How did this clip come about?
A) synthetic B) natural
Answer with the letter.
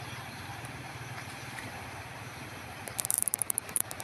A